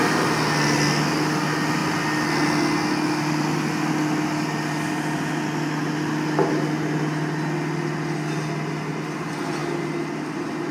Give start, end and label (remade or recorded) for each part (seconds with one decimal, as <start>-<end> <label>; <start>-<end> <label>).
0.0-10.7 recorded

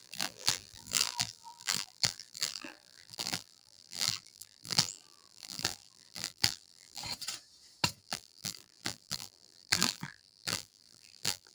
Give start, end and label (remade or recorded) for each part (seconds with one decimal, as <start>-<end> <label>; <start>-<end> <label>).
0.0-7.0 remade; 7.0-8.0 recorded; 8.0-11.5 remade